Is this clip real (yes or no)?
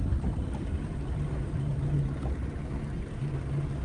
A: yes